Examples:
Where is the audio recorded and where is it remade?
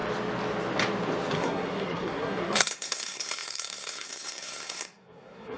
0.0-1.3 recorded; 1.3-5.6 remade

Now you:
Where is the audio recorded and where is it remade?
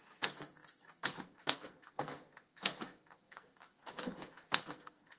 0.0-5.2 remade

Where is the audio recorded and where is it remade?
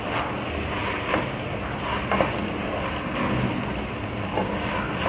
0.0-5.1 recorded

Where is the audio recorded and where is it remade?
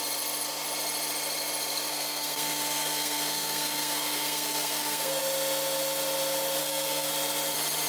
0.0-1.9 recorded; 1.9-5.2 remade; 5.2-6.6 recorded; 6.6-7.1 remade; 7.1-7.9 recorded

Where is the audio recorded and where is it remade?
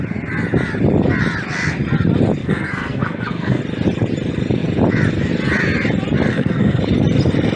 0.0-2.4 recorded; 2.4-3.6 remade; 3.6-6.3 recorded; 6.3-6.8 remade; 6.8-7.6 recorded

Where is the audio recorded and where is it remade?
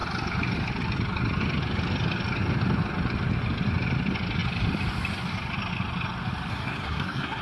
0.0-6.5 recorded; 6.5-7.4 remade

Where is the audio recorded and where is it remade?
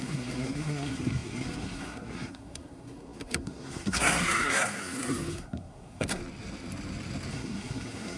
0.0-6.2 remade; 6.2-7.3 recorded; 7.3-8.2 remade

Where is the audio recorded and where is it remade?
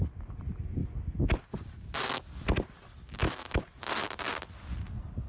0.0-5.3 recorded